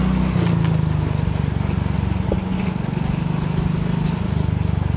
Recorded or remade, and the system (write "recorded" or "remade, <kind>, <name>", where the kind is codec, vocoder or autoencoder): recorded